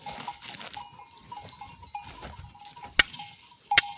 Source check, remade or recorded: recorded